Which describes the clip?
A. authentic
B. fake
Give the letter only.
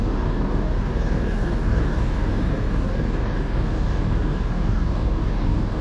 B